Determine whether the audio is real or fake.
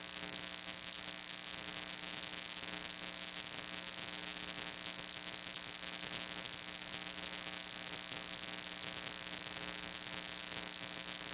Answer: real